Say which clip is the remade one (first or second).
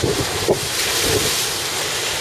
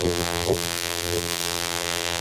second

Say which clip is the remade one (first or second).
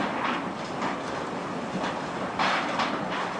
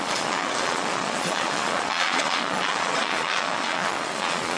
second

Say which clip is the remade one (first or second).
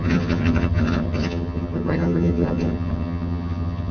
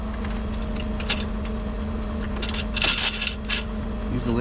first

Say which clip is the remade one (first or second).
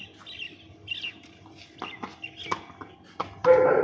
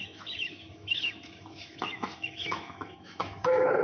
second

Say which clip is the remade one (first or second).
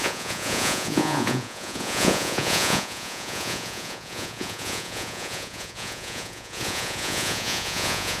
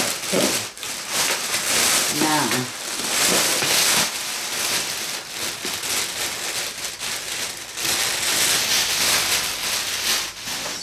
first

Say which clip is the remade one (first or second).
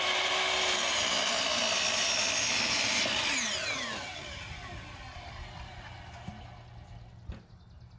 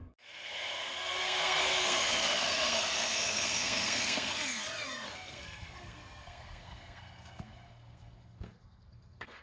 second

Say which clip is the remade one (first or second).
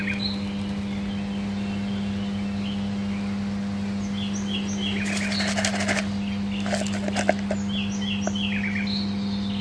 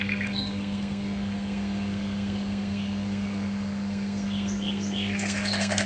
second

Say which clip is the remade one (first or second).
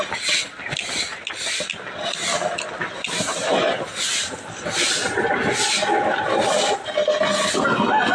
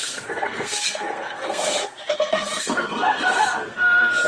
second